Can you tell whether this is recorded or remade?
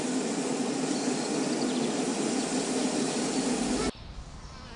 recorded